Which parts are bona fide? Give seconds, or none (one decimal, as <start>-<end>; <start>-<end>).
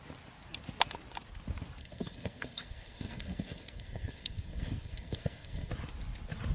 0.0-1.8; 5.7-6.5